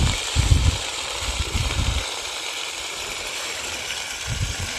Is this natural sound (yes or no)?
no